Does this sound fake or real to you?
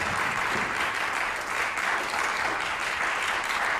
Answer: real